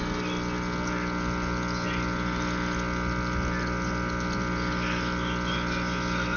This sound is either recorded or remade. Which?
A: recorded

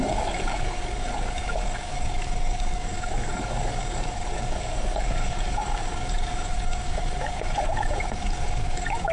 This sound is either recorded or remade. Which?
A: remade